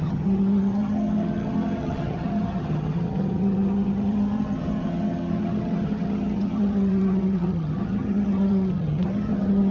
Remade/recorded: remade